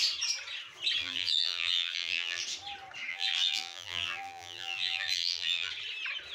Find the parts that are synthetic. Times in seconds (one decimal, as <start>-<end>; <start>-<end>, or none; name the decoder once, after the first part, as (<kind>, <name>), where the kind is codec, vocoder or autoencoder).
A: 1.0-2.4 (vocoder, BigVGAN v2); 3.1-5.7